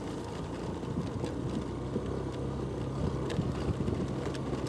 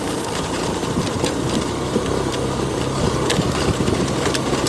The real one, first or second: first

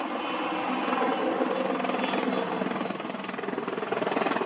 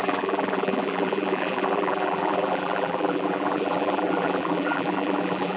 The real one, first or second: first